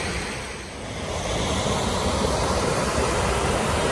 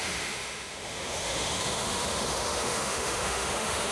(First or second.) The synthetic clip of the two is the second